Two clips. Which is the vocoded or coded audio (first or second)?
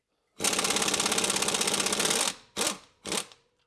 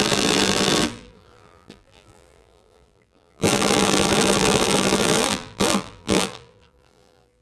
second